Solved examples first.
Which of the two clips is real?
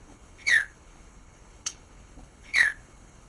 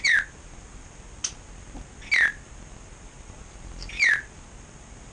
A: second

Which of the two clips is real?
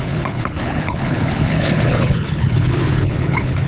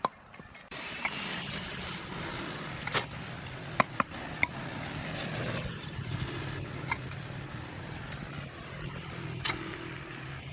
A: second